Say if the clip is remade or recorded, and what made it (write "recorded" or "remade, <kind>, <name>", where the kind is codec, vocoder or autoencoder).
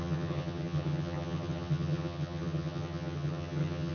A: remade, vocoder, HiFi-GAN